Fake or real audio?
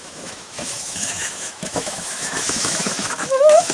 fake